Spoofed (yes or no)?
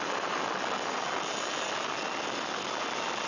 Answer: no